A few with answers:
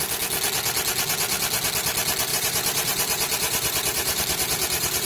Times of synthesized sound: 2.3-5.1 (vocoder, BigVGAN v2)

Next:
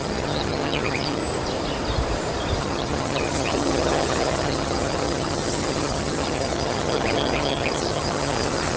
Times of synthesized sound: 0.0-1.2 (vocoder, HiFi-GAN); 2.6-8.8

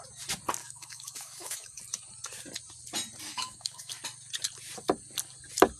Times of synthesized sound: 0.6-1.8 (autoencoder, DAC-VAE); 3.3-3.9